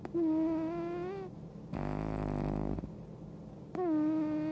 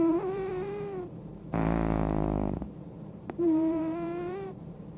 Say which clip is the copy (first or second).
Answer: second